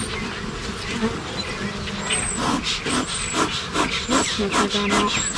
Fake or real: real